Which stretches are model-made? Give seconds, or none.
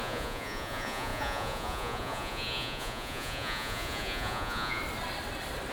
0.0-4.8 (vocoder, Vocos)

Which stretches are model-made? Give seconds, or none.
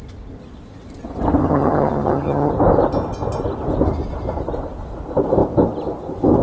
1.4-2.5 (vocoder, HiFi-GAN)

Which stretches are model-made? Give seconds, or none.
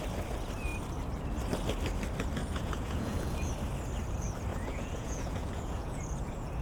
2.4-3.4 (vocoder, Vocos); 4.5-6.6